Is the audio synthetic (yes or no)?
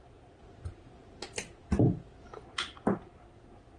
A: no